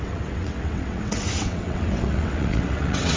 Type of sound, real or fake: fake